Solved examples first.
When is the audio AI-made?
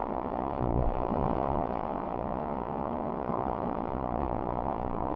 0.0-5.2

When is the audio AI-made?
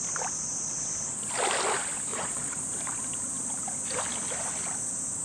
2.1-2.6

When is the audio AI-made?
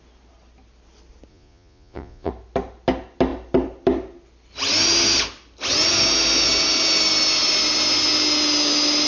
1.3-2.3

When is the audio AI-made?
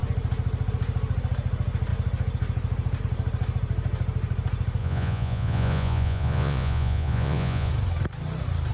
4.8-7.7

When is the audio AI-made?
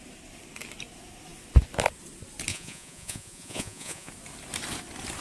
2.5-4.1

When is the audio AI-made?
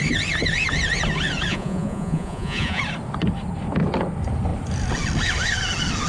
1.5-2.8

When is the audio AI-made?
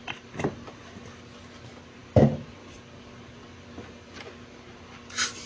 none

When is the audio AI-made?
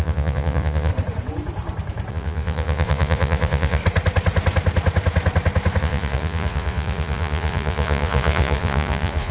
0.0-0.9; 2.1-3.8; 5.8-9.3